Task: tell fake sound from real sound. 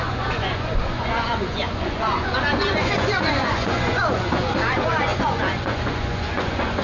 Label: fake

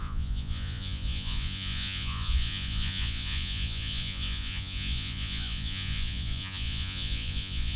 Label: fake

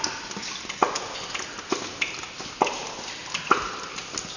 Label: real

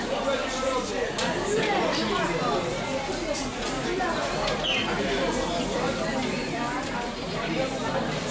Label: real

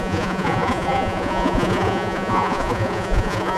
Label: fake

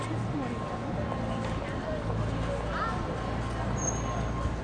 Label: real